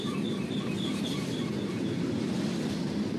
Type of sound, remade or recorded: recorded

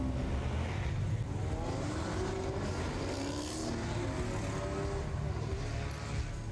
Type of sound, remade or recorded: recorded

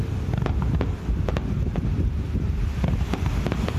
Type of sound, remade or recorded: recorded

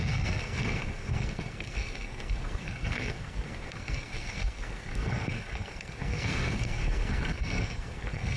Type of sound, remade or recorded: remade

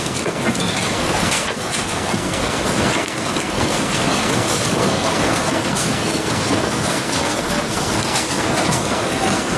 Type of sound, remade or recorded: remade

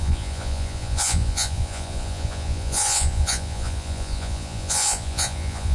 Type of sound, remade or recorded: remade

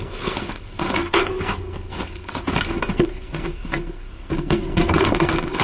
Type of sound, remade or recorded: remade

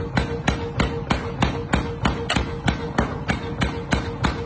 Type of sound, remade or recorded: recorded